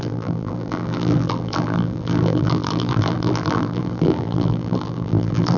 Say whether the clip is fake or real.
fake